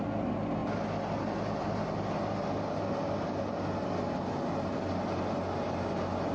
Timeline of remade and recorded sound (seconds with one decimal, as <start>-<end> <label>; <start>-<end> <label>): 0.0-6.3 recorded